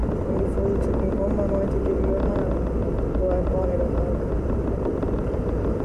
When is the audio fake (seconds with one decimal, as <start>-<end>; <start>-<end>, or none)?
3.4-5.8